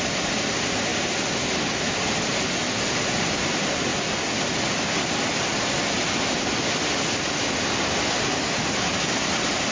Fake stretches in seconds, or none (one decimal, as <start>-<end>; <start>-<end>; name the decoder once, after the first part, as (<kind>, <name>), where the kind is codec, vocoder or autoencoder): none